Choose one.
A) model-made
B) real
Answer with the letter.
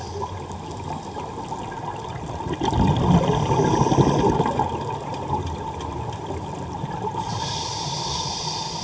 B